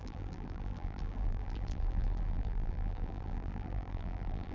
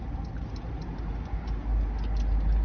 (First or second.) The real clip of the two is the second